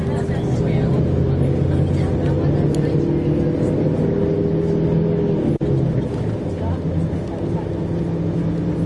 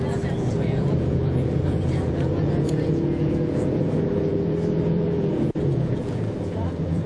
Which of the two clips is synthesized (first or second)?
second